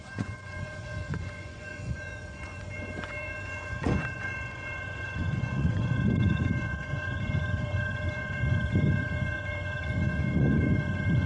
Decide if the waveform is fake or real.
fake